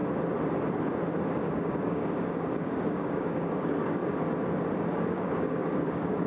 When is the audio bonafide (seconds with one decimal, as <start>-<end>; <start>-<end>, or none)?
0.0-1.4; 4.0-5.0